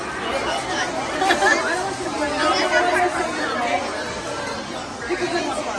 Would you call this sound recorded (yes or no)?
yes